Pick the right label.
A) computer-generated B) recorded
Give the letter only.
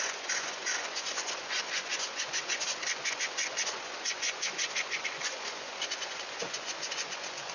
A